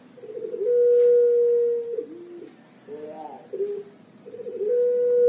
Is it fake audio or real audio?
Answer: real